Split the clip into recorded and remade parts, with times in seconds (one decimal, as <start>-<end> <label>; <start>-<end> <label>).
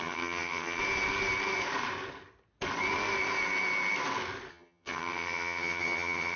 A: 0.0-0.8 remade; 0.8-4.5 recorded; 4.5-6.4 remade